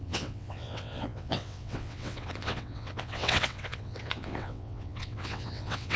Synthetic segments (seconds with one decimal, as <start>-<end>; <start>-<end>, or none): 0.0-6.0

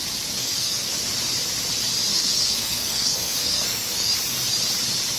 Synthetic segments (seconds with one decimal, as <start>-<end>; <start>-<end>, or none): 0.4-0.9; 2.1-4.1

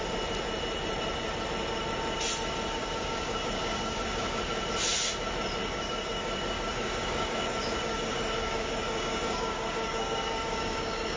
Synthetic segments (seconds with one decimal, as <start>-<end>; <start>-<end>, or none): 2.8-4.4; 5.6-11.2